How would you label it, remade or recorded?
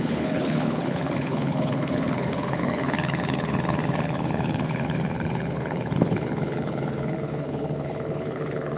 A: remade